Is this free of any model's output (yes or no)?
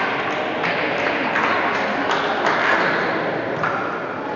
yes